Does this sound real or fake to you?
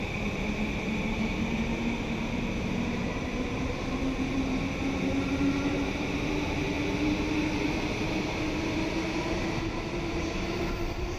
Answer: real